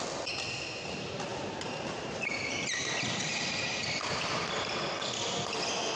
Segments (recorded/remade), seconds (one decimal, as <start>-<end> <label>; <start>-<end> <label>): 0.0-1.3 recorded; 1.3-4.5 remade; 4.5-6.0 recorded